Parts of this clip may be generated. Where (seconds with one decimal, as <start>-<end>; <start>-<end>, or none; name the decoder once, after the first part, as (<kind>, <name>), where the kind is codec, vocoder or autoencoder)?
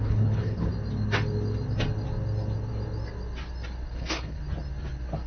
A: 0.0-0.7 (codec, HILCodec); 3.9-4.4